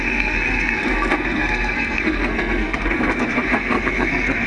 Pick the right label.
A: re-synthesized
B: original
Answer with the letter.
A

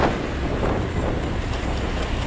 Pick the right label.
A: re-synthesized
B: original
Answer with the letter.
B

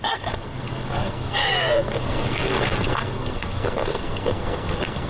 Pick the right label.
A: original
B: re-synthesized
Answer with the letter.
B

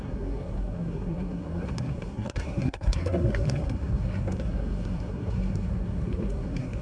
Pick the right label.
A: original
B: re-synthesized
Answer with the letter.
B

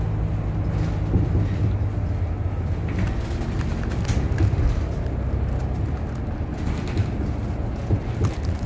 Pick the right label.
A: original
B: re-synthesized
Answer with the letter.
A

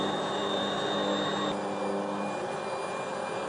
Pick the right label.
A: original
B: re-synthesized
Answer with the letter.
A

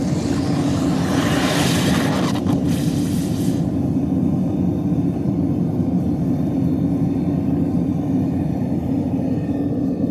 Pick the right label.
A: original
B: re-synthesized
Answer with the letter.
A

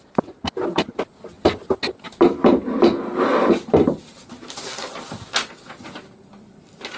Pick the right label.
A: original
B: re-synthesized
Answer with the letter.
A